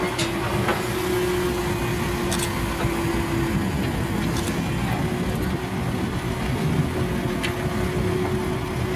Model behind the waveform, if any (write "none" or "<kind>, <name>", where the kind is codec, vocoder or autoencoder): none